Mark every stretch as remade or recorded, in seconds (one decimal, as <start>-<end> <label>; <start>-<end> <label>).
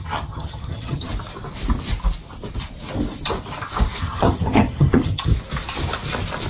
0.0-1.1 remade; 1.1-4.0 recorded; 4.0-5.3 remade; 5.3-6.5 recorded